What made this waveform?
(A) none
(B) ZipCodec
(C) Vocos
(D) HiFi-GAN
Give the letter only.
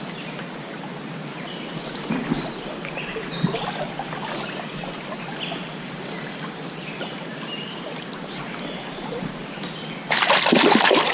A